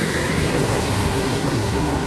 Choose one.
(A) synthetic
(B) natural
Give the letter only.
A